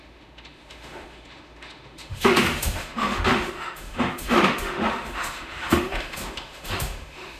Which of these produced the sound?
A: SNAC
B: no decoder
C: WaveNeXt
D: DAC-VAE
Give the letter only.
D